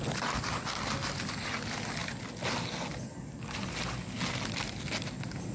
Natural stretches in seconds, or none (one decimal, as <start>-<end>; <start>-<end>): 0.0-5.5